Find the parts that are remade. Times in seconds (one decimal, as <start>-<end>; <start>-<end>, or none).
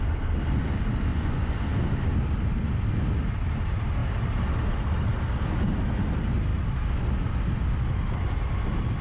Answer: 1.1-1.6